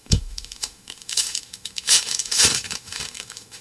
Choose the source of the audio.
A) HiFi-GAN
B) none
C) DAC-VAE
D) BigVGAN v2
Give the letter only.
C